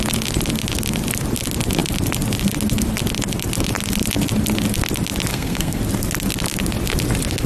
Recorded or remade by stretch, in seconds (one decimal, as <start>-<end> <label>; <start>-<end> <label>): 0.0-5.3 recorded; 5.3-5.8 remade; 5.8-7.5 recorded